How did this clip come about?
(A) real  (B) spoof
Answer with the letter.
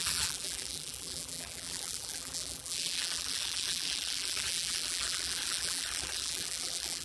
B